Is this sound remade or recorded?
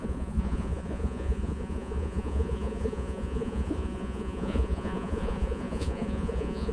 remade